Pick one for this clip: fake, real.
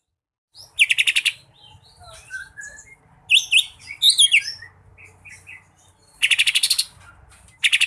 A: real